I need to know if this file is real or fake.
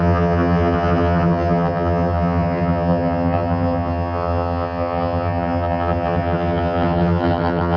fake